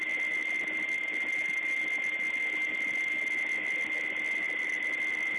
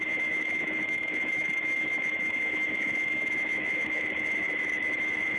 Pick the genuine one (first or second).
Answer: first